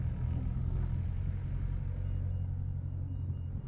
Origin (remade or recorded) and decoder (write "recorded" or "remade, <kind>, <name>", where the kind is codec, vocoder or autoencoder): recorded